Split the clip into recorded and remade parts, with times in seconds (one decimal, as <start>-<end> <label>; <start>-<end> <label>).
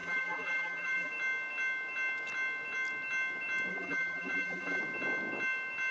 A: 0.0-1.1 remade; 1.1-3.7 recorded; 3.7-4.8 remade; 4.8-5.9 recorded